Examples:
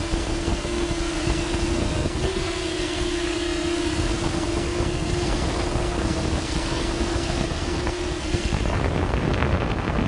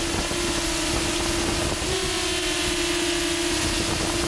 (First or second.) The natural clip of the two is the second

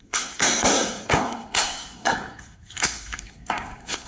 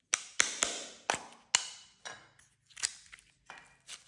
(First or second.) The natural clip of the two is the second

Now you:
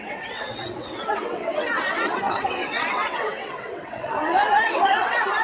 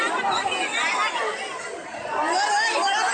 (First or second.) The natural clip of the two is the second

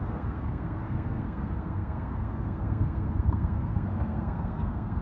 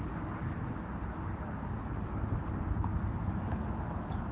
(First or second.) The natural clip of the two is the second